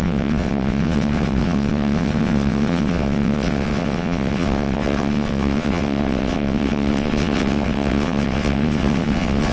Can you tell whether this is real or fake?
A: fake